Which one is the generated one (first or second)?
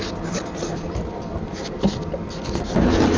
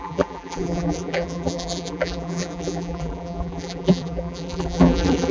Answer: second